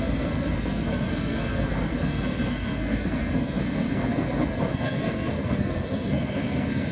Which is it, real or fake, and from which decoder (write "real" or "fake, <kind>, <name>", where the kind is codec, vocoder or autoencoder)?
fake, codec, SNAC